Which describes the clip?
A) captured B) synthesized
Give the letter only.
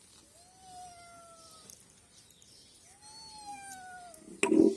A